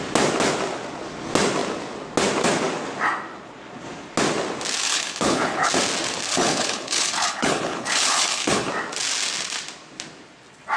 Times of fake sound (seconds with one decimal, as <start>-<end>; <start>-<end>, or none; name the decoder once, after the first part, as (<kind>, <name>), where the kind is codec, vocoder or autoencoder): 4.9-5.7 (codec, HILCodec); 6.3-8.7